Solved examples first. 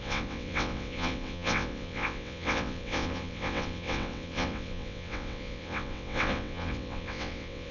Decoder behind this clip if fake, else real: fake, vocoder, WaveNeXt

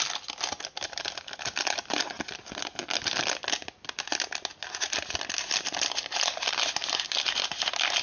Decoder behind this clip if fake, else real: real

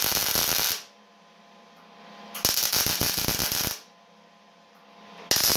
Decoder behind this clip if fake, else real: real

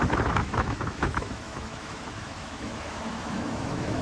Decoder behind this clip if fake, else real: fake, autoencoder, DAC-VAE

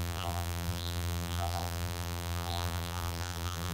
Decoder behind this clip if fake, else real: fake, vocoder, BigVGAN v2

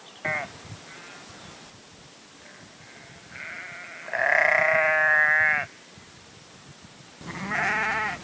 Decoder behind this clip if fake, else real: real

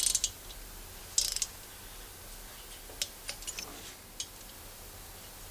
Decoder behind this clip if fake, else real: real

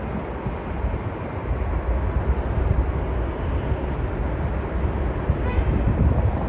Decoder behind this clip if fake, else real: real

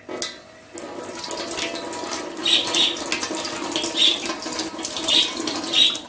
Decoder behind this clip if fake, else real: real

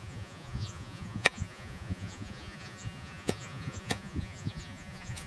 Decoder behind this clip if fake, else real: fake, vocoder, Vocos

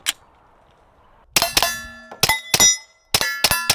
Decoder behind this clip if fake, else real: real